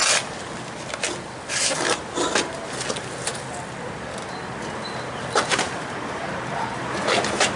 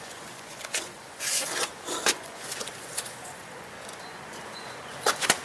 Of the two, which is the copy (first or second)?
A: second